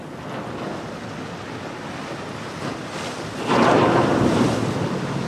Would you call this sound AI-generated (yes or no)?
no